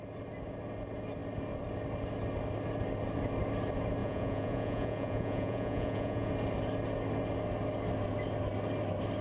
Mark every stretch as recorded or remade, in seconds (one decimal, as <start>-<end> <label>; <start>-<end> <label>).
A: 0.0-4.0 recorded; 4.0-6.3 remade; 6.3-9.2 recorded